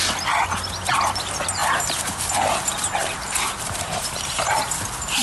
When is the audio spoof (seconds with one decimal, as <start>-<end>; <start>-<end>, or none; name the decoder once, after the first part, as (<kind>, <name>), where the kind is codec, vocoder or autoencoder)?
1.6-4.7 (vocoder, BigVGAN v2)